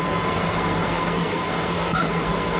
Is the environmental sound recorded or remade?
remade